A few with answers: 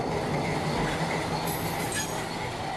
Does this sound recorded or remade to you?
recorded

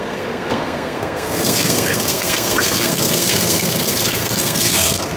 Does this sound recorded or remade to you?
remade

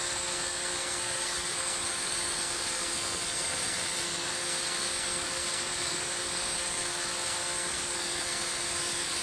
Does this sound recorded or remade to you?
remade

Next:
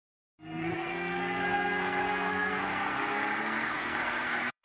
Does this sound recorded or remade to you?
remade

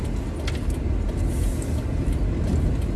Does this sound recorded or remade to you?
recorded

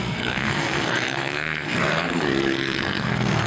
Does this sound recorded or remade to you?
remade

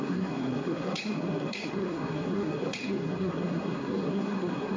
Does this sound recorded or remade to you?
remade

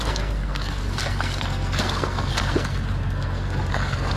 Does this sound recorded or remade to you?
remade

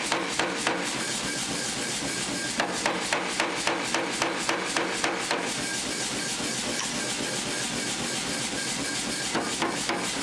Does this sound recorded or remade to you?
recorded